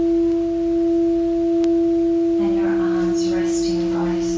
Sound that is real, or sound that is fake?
real